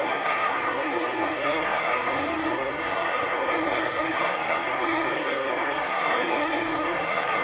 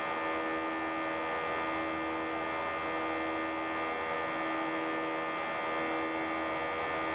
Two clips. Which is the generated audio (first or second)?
first